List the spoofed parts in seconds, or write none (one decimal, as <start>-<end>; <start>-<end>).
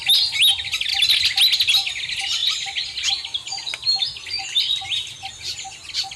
none